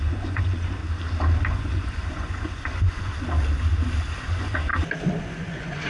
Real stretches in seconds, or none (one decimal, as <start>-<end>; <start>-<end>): 0.8-1.5; 3.1-4.3; 4.7-5.2